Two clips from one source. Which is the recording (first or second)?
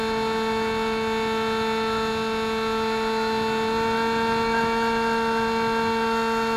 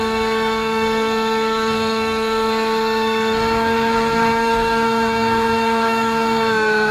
first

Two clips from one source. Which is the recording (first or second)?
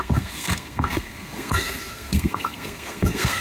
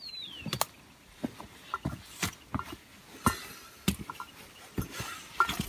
second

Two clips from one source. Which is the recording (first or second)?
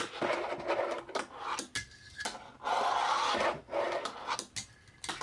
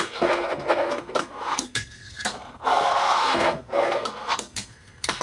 first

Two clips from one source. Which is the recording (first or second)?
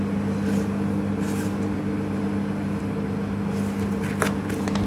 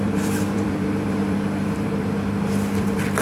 first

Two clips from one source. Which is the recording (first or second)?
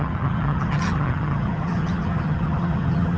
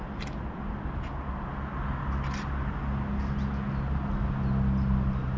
second